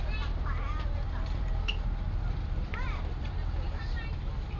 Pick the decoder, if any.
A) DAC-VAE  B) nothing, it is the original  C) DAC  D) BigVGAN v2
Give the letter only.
D